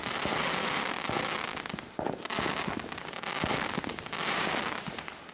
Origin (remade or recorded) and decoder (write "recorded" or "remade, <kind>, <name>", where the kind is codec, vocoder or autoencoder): recorded